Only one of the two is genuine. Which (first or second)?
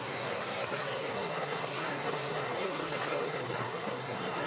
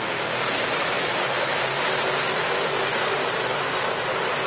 second